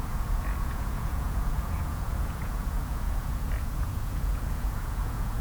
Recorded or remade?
remade